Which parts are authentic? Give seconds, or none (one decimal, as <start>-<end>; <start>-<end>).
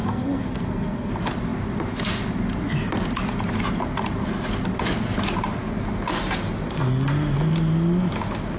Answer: 1.1-8.6